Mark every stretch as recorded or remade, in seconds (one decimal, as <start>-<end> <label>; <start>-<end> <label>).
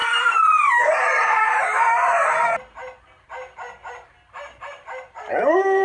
0.0-2.1 remade; 2.1-4.6 recorded; 4.6-5.8 remade